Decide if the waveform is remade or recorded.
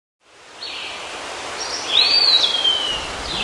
recorded